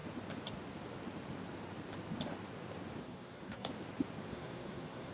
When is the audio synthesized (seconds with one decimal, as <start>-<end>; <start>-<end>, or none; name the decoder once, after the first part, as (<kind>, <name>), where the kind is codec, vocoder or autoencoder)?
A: 3.0-3.7 (codec, SNAC); 4.3-5.1